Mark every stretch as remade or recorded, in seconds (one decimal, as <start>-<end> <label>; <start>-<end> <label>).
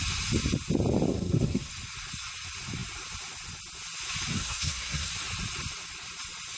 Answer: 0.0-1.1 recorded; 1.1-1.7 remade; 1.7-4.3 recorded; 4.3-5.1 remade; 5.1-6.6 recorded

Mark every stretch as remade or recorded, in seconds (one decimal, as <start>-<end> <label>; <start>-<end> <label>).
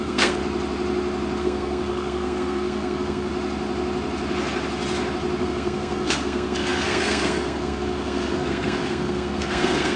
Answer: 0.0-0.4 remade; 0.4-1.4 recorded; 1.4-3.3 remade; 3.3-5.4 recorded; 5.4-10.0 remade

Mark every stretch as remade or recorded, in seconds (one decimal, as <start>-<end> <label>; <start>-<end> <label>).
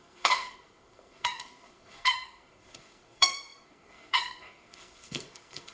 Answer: 0.0-5.7 remade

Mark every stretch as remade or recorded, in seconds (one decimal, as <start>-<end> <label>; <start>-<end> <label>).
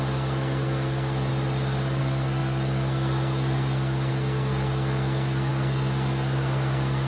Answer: 0.0-1.3 remade; 1.3-2.0 recorded; 2.0-7.1 remade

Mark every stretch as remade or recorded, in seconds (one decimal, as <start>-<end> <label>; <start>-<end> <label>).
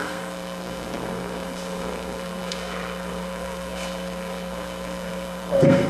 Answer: 0.0-5.9 remade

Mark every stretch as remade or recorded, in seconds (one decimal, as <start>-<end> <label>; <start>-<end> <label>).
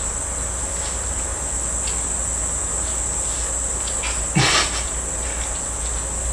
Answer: 0.0-6.3 recorded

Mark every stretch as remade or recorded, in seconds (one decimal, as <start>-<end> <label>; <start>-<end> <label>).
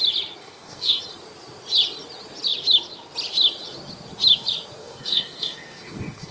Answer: 0.0-0.4 recorded; 0.4-1.0 remade; 1.0-4.8 recorded; 4.8-6.3 remade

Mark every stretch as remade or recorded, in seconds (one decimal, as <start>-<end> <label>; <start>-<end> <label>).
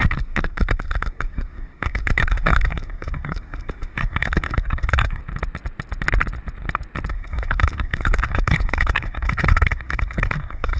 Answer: 0.0-5.2 remade; 5.2-7.1 recorded; 7.1-10.8 remade